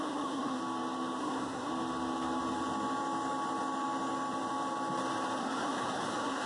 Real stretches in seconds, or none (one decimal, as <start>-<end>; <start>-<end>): 0.6-1.2; 1.7-5.4